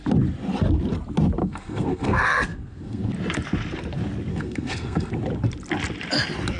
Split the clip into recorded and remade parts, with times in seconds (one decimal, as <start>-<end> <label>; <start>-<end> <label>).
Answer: 0.0-1.4 recorded; 1.4-3.1 remade; 3.1-4.3 recorded; 4.3-5.1 remade; 5.1-6.6 recorded